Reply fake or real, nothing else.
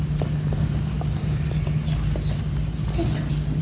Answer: real